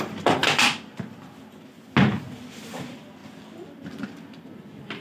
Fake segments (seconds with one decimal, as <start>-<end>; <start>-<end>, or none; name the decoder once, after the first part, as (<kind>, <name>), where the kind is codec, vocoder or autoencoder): none